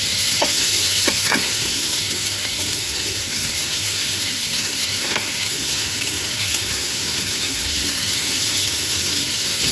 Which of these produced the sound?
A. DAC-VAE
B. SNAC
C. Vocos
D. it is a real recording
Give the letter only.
B